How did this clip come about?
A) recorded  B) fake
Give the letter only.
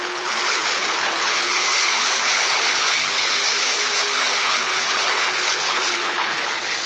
B